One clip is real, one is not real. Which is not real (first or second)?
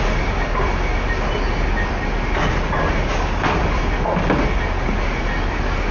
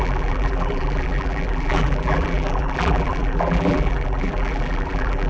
second